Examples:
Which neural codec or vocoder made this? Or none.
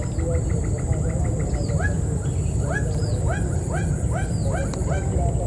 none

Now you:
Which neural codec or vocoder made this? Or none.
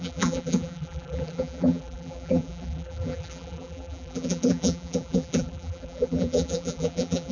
vocoder, BigVGAN v2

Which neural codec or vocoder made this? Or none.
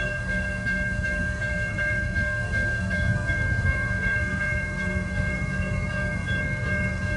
codec, SNAC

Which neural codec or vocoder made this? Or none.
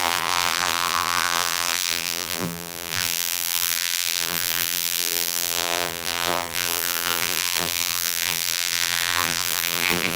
vocoder, BigVGAN v2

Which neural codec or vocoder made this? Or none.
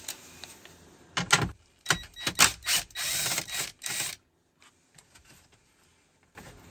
none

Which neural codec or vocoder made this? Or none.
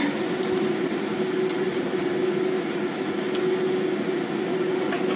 none